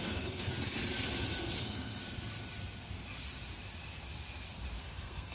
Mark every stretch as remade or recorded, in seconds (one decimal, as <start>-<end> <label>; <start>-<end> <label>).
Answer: 0.0-0.4 remade; 0.4-1.6 recorded; 1.6-2.0 remade; 2.0-4.8 recorded; 4.8-5.3 remade